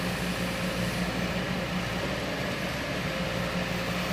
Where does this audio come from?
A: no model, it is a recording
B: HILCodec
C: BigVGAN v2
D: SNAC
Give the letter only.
A